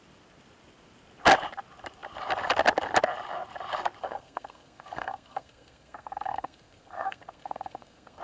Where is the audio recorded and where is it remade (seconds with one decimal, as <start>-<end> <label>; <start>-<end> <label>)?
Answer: 0.0-4.0 recorded; 4.0-8.2 remade